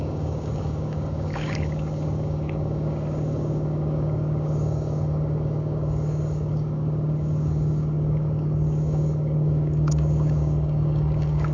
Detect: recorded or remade remade